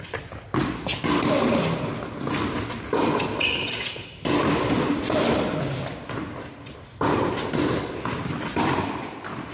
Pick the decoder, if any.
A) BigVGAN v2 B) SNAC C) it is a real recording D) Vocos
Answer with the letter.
C